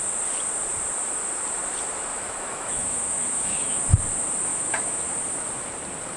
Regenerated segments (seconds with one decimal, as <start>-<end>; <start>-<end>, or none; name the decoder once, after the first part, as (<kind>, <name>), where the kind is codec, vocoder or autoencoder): 2.1-3.8 (autoencoder, DAC-VAE); 4.5-5.1